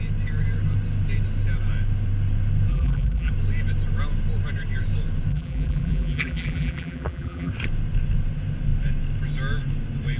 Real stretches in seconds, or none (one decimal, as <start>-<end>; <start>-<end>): 0.0-2.7; 3.3-5.3; 7.5-10.2